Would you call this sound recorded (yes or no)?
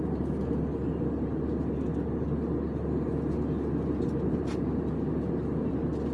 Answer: yes